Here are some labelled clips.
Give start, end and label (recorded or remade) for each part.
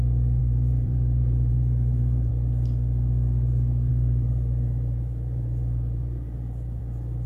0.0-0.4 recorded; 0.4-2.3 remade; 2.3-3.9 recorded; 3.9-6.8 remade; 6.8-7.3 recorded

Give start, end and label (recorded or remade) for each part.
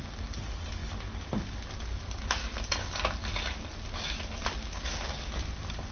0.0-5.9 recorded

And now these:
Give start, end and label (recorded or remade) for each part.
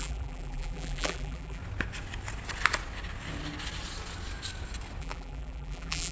0.0-1.6 remade; 1.6-5.0 recorded; 5.0-6.1 remade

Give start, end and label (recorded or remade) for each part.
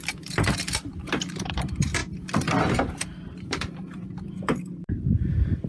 0.0-2.0 remade; 2.0-2.7 recorded; 2.7-5.7 remade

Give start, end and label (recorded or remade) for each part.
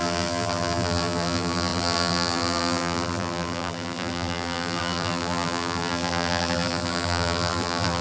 0.0-8.0 remade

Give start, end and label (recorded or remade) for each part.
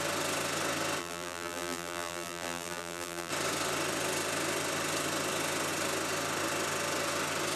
0.0-1.0 recorded; 1.0-3.3 remade; 3.3-7.6 recorded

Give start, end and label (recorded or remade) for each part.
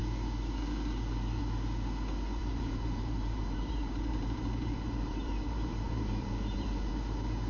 0.0-2.4 recorded; 2.4-6.9 remade; 6.9-7.5 recorded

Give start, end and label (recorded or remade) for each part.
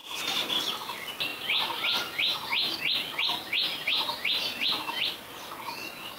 0.0-0.6 remade; 0.6-1.3 recorded; 1.3-2.8 remade; 2.8-3.7 recorded; 3.7-5.0 remade; 5.0-6.2 recorded